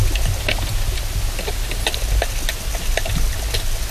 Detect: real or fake real